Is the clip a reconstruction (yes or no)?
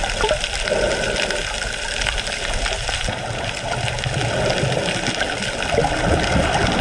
no